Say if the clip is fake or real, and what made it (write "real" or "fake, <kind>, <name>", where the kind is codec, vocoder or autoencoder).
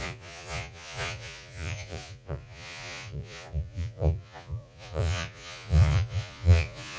fake, vocoder, Vocos